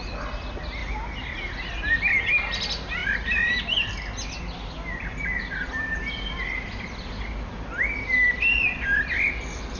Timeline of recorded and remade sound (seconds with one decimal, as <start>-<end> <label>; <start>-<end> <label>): 0.0-9.8 recorded